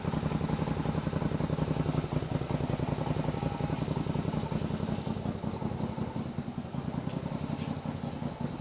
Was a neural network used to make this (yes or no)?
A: no